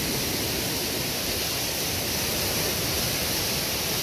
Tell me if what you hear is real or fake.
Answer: real